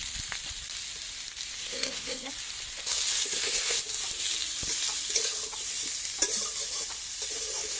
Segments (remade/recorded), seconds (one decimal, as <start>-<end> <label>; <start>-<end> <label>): 0.0-1.6 recorded; 1.6-2.3 remade; 2.3-3.1 recorded; 3.1-3.8 remade; 3.8-7.8 recorded